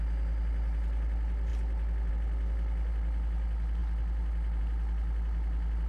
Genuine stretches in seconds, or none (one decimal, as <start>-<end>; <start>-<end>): 0.0-5.9